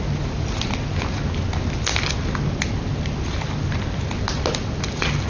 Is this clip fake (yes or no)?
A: no